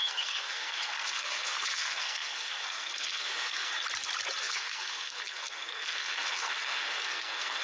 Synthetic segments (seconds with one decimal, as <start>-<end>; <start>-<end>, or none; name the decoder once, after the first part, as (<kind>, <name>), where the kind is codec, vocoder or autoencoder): 0.0-3.7 (codec, SNAC); 4.4-7.6